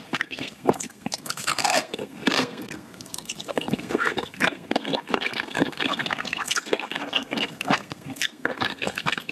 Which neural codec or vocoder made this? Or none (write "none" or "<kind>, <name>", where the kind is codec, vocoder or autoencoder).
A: codec, SNAC